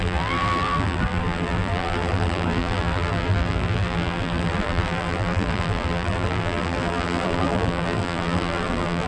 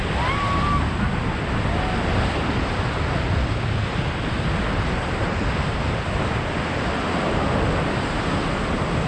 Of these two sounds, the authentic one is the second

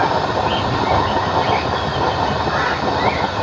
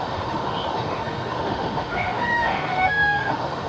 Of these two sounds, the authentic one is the first